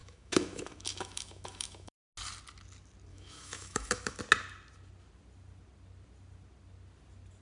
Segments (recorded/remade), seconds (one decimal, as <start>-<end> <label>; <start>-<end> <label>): 0.0-2.0 remade; 2.0-3.1 recorded; 3.1-4.2 remade; 4.2-7.4 recorded